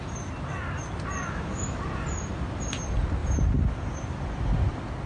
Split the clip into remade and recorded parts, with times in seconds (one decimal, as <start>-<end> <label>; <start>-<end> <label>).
0.0-1.2 recorded; 1.2-1.8 remade; 1.8-5.1 recorded